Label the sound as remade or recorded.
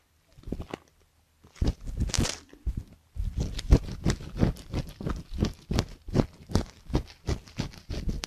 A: recorded